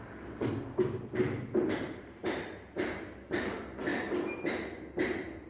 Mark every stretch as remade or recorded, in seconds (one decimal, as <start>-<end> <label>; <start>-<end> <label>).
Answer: 0.0-1.6 recorded; 1.6-3.4 remade; 3.4-3.9 recorded; 3.9-4.5 remade; 4.5-5.5 recorded